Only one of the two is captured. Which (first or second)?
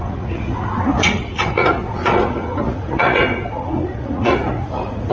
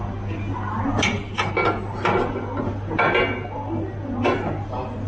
second